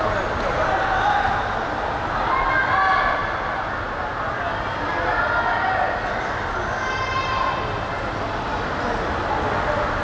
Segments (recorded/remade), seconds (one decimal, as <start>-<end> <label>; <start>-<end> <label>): 0.0-10.0 recorded